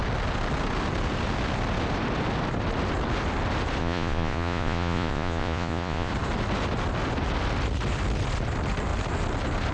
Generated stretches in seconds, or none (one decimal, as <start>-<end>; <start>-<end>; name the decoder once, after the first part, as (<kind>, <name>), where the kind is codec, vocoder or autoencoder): 3.8-6.1 (vocoder, Vocos)